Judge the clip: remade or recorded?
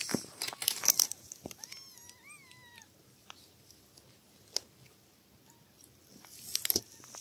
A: recorded